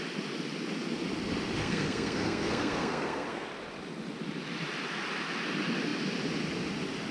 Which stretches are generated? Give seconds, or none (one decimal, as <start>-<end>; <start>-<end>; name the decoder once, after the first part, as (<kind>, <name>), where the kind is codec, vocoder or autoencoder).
1.6-3.5 (codec, SNAC)